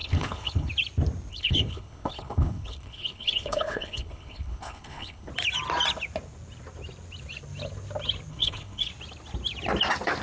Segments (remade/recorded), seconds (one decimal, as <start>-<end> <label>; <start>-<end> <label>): 0.0-0.7 remade; 0.7-1.3 recorded; 1.3-5.3 remade; 5.3-8.3 recorded; 8.3-8.9 remade; 8.9-10.2 recorded